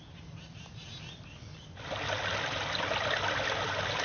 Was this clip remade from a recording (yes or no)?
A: no